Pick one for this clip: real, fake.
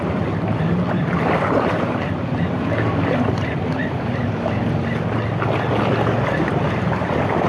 real